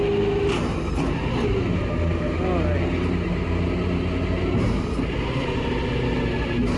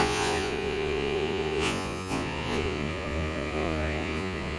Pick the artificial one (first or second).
second